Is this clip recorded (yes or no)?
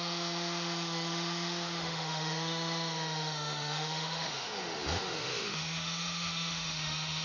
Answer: no